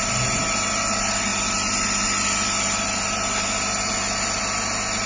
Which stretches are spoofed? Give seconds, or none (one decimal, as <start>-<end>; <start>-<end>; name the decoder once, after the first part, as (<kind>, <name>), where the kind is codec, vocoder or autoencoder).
none